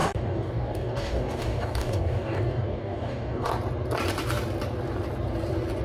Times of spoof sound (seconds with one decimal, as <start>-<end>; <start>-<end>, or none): 0.0-3.5